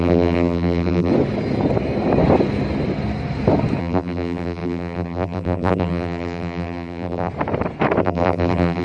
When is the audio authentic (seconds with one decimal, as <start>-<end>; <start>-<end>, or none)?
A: 1.1-3.8; 7.3-8.0